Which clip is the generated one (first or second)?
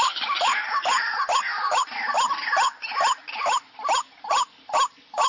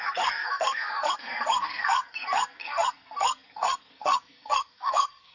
second